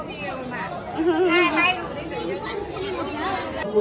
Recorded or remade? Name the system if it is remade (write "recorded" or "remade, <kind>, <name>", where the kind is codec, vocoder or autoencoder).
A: recorded